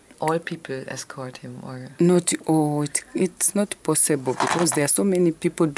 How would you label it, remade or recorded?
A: remade